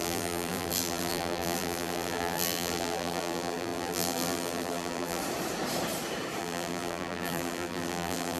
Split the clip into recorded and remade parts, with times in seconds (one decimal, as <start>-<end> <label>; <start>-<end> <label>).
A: 0.0-5.2 remade; 5.2-6.4 recorded; 6.4-8.4 remade

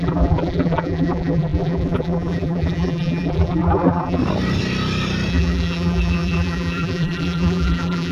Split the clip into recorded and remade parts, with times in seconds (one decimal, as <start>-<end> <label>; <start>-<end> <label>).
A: 0.0-4.2 remade; 4.2-5.3 recorded; 5.3-8.1 remade